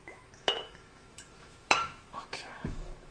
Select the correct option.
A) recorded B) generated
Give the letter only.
B